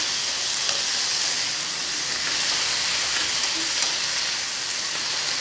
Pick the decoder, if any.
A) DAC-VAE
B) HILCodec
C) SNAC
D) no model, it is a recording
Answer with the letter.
D